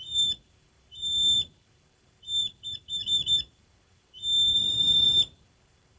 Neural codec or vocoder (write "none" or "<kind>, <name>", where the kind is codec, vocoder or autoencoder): vocoder, BigVGAN v2